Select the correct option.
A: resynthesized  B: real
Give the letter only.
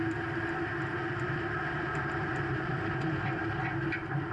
B